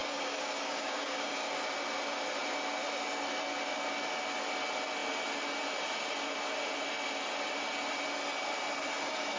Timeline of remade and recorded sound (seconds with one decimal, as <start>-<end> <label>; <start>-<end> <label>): 0.0-1.6 remade; 1.6-9.4 recorded